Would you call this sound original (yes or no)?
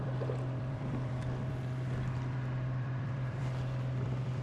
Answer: no